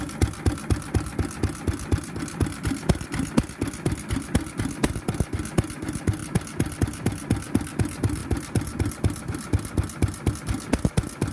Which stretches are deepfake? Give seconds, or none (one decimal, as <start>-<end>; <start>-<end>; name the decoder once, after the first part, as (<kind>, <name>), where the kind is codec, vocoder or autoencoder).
none